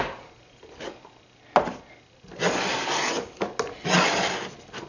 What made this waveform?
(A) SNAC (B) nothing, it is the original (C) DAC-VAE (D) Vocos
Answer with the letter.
B